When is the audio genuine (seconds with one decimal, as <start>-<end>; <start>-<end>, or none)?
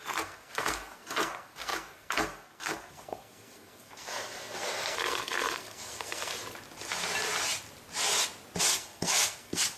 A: 6.3-8.6